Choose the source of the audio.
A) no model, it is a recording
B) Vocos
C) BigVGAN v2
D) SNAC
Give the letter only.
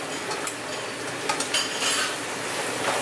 A